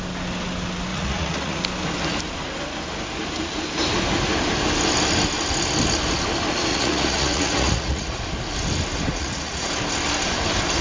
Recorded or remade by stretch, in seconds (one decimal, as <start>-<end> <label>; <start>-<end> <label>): 0.0-0.9 recorded; 0.9-1.6 remade; 1.6-6.7 recorded; 6.7-8.2 remade; 8.2-9.1 recorded; 9.1-9.7 remade; 9.7-10.8 recorded